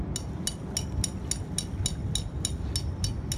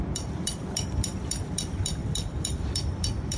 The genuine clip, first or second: first